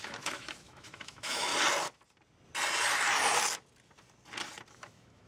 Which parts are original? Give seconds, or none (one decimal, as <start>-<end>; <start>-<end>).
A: 1.5-4.7

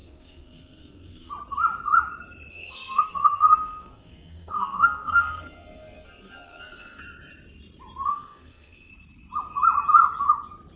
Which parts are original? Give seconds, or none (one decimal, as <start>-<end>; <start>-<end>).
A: 1.3-2.5; 7.0-8.1; 8.9-10.8

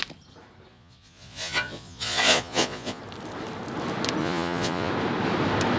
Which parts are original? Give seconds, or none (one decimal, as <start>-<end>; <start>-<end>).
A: 0.0-0.7; 3.0-4.2; 4.9-5.8

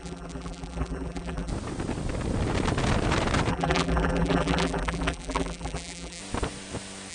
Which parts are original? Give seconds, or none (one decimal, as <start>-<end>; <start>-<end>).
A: 1.5-3.5; 6.2-7.1

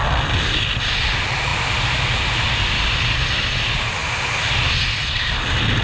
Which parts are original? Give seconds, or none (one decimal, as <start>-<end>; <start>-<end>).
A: 0.0-5.8